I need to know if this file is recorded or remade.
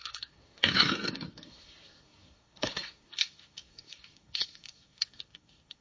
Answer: remade